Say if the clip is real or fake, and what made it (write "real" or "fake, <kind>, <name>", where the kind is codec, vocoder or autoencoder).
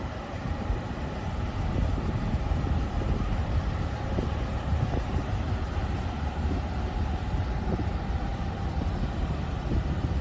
fake, vocoder, BigVGAN v2